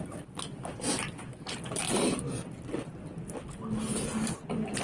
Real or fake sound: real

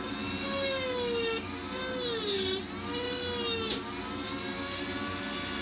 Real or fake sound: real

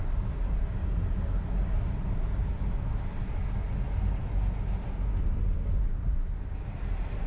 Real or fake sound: real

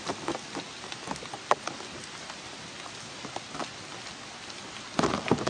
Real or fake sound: real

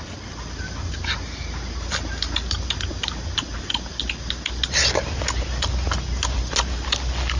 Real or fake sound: real